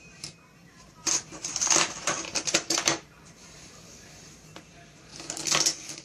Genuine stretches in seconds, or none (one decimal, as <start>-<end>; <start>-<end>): 5.1-6.0